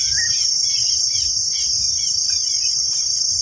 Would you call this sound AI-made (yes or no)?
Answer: no